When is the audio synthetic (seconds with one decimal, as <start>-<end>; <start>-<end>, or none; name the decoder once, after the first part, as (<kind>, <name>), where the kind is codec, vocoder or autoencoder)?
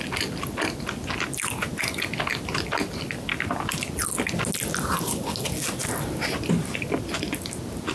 none